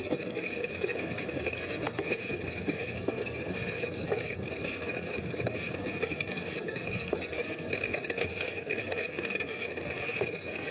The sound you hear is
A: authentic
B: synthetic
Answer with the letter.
B